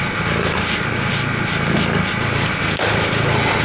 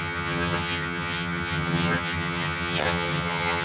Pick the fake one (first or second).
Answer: second